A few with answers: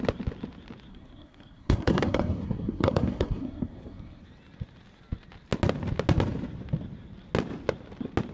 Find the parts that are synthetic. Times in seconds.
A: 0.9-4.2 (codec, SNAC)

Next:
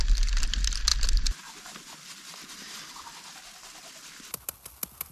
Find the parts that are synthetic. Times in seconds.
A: none

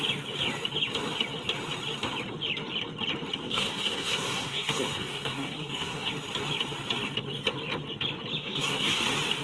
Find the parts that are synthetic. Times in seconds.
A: 3.4-6.1 (codec, SNAC); 8.4-9.0

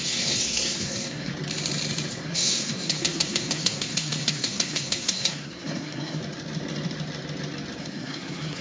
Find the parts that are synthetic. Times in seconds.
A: 0.0-1.3 (codec, SNAC); 2.1-6.2; 7.8-8.6

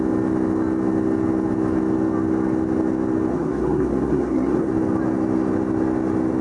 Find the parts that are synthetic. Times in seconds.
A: 3.3-4.7 (codec, SNAC)